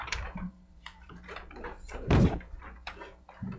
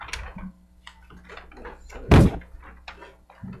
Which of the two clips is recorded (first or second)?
second